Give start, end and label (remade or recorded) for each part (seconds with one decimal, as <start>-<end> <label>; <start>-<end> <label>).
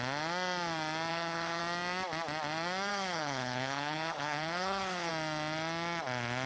0.0-1.1 recorded; 1.1-1.6 remade; 1.6-2.9 recorded; 2.9-5.1 remade; 5.1-6.5 recorded